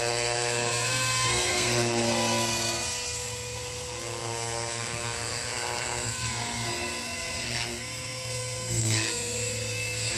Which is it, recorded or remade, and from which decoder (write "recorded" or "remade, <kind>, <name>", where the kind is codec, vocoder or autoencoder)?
remade, codec, SNAC